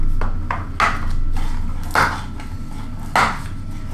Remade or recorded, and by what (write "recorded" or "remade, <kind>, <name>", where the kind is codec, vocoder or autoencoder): recorded